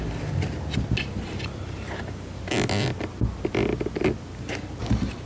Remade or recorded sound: recorded